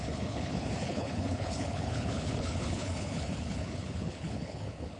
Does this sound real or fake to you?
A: fake